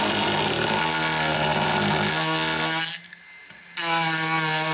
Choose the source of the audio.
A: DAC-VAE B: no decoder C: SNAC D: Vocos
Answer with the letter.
B